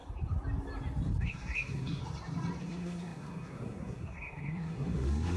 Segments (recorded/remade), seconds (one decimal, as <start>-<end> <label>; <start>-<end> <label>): 0.0-1.2 recorded; 1.2-2.0 remade; 2.0-2.6 recorded; 2.6-5.4 remade